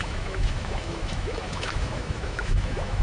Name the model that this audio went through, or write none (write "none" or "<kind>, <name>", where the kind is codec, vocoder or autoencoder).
autoencoder, DAC-VAE